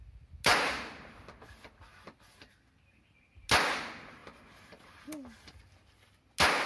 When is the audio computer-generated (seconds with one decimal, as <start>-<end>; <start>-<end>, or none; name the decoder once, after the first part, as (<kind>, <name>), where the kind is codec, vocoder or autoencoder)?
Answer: none